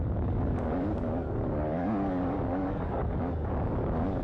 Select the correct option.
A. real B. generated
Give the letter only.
B